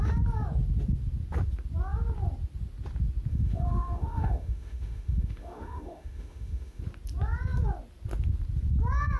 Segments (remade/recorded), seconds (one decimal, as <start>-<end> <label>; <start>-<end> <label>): 0.0-3.3 recorded; 3.3-6.8 remade; 6.8-9.2 recorded